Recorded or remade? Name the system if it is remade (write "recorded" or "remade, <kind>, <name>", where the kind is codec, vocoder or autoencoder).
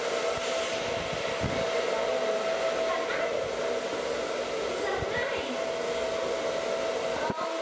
recorded